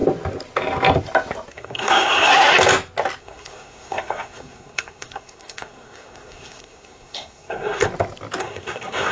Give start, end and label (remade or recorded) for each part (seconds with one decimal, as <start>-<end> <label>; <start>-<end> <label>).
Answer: 0.0-1.5 recorded; 1.5-2.3 remade; 2.3-3.2 recorded; 3.2-7.9 remade; 7.9-8.4 recorded; 8.4-9.1 remade